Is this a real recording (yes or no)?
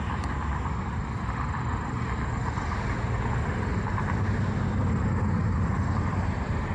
yes